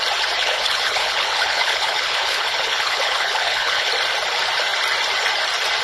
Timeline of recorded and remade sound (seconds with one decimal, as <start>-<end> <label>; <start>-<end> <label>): 0.0-0.4 recorded; 0.4-3.9 remade; 3.9-5.8 recorded